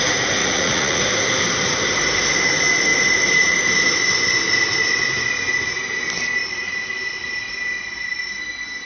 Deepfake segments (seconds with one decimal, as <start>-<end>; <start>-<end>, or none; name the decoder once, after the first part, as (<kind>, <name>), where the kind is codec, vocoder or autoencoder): 0.4-1.0 (vocoder, Vocos)